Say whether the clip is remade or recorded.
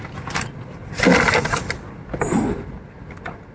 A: recorded